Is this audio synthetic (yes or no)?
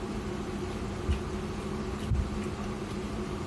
no